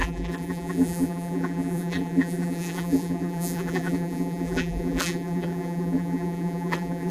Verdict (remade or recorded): remade